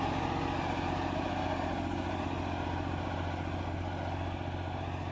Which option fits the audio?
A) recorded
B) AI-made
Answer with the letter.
A